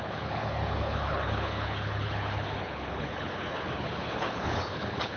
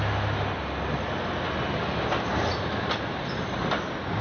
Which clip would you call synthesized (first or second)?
first